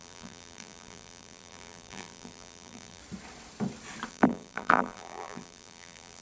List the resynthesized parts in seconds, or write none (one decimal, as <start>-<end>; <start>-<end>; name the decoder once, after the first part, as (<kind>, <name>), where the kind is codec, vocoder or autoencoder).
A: 0.0-3.0 (vocoder, BigVGAN v2); 4.1-6.2